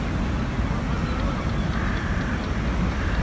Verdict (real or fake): real